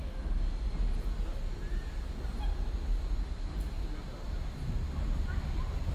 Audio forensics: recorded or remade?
recorded